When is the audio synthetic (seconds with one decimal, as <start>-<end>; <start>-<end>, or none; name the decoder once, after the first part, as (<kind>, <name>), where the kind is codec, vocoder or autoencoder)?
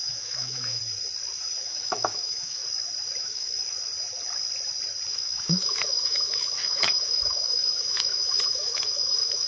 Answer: 0.0-0.8 (autoencoder, DAC-VAE); 1.6-2.6; 3.2-3.6; 5.1-9.5